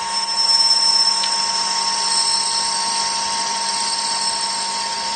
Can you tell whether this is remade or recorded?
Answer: recorded